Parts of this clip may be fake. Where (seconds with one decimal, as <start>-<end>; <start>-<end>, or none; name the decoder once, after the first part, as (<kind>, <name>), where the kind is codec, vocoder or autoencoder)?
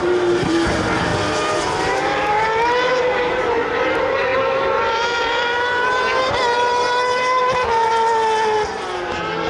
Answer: 0.0-1.1 (vocoder, BigVGAN v2); 1.8-7.9; 8.7-9.5